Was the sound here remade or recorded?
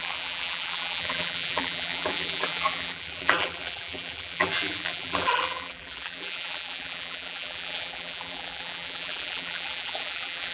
remade